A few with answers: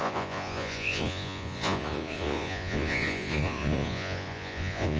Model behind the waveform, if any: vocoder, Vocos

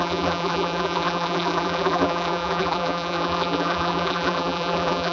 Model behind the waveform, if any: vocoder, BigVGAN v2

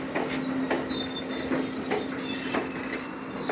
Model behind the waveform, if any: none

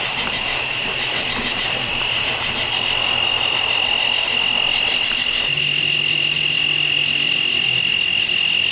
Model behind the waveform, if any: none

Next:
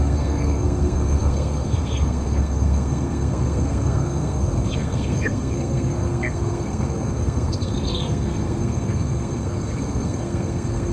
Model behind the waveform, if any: codec, SNAC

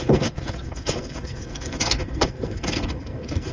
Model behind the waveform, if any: codec, SNAC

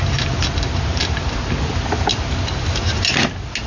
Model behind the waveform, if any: none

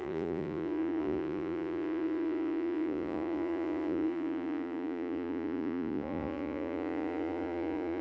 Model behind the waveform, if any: vocoder, Vocos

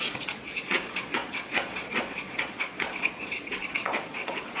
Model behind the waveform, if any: vocoder, Vocos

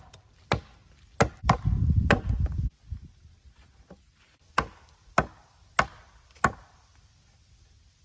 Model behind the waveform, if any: none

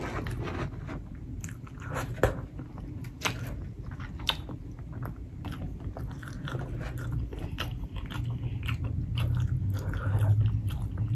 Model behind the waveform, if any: none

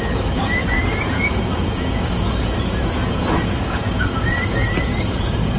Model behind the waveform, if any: vocoder, Vocos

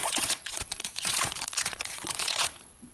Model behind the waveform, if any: vocoder, Vocos